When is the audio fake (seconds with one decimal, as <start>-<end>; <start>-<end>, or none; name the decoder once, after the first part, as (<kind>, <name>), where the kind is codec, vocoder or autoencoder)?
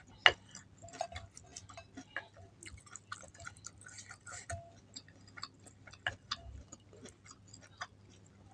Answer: none